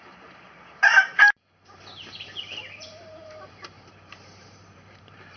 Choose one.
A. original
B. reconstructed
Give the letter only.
B